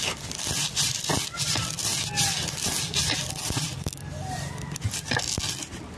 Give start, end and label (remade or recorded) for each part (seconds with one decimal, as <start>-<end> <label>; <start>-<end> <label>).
0.0-6.0 recorded